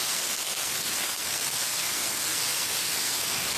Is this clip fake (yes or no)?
yes